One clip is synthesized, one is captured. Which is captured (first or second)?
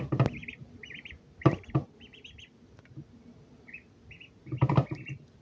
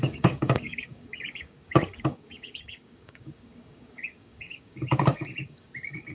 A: first